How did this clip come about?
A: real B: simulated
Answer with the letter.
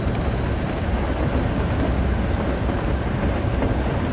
A